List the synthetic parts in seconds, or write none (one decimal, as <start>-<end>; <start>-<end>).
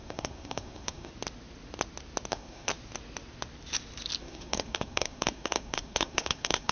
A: 0.0-1.1; 2.3-2.7; 4.2-6.7